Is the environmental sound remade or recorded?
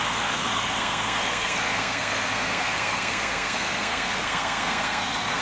remade